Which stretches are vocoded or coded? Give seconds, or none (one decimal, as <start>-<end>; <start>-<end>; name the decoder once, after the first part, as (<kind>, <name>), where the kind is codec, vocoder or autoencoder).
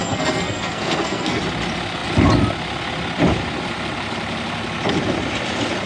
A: 0.0-1.4 (codec, SNAC)